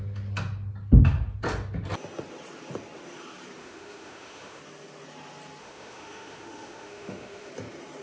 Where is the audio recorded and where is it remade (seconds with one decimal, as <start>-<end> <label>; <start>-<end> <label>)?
0.0-3.6 recorded; 3.6-4.6 remade; 4.6-5.6 recorded; 5.6-7.5 remade; 7.5-8.0 recorded